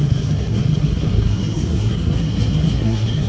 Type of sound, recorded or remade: remade